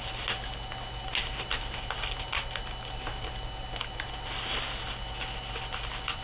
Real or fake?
real